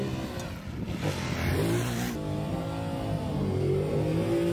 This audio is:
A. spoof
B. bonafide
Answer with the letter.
B